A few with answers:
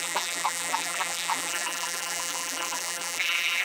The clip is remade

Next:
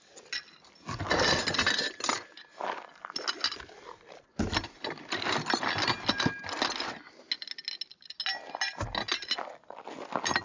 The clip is recorded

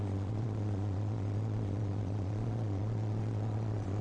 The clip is remade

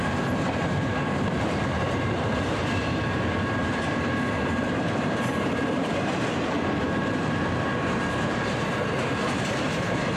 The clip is remade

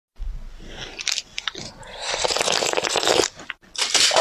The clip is recorded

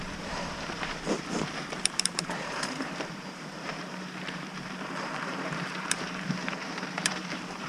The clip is remade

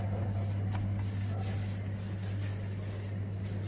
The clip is recorded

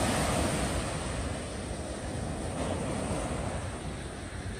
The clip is recorded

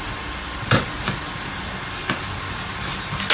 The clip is recorded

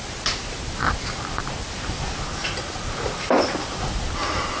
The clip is recorded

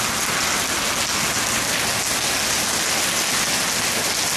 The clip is recorded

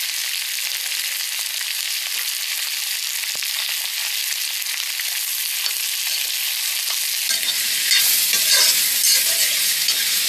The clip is recorded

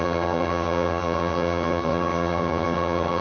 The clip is remade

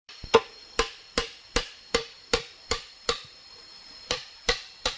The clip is remade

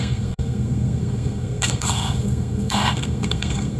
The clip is remade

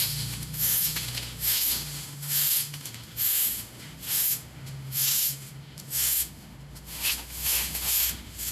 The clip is remade